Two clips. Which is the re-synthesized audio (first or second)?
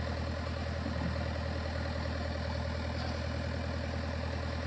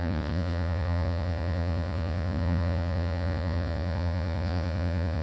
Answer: second